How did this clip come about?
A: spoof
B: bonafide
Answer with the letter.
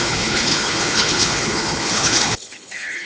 A